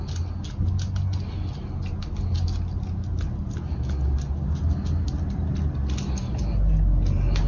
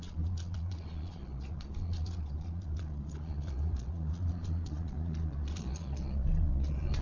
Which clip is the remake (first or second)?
second